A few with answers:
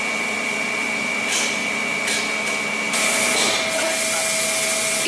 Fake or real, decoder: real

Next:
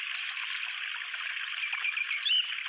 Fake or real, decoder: real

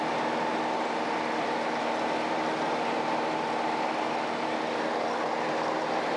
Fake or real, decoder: real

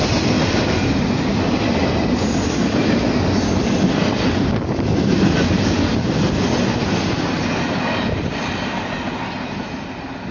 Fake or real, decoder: real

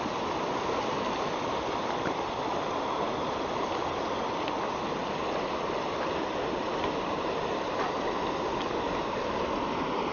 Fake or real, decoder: real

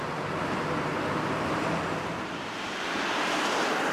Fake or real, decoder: fake, vocoder, BigVGAN v2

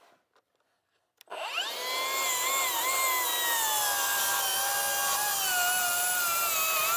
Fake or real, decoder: real